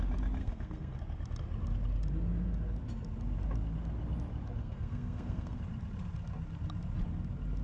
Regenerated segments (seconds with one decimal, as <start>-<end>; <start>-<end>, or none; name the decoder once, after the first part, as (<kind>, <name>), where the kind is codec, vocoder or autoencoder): 0.4-1.0 (codec, SNAC); 4.6-5.6